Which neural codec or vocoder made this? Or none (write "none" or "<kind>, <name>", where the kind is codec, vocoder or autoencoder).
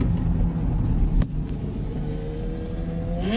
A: none